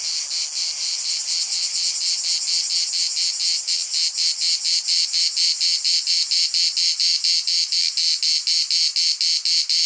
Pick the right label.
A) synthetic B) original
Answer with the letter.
B